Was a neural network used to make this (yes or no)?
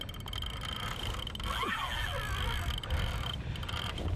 no